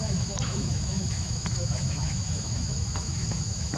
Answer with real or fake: fake